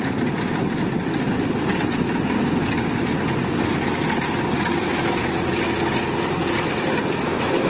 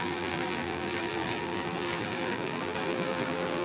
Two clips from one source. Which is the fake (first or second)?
second